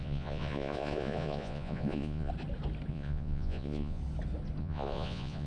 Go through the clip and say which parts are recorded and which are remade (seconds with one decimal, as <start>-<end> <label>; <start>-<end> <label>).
0.0-2.3 remade; 2.3-2.9 recorded; 2.9-4.0 remade; 4.0-4.6 recorded; 4.6-5.5 remade